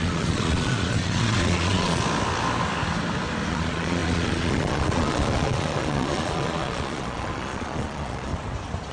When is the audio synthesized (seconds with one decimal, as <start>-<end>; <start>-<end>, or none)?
0.0-2.0; 3.5-8.3